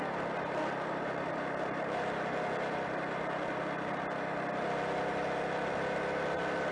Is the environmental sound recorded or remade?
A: recorded